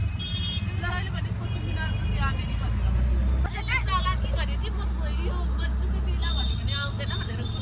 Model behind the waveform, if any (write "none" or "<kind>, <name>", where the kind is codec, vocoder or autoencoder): none